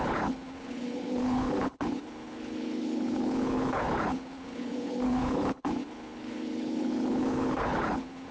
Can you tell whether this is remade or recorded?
remade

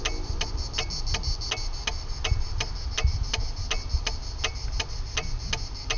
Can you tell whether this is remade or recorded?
recorded